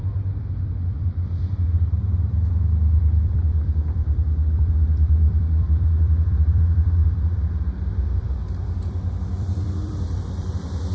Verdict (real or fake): fake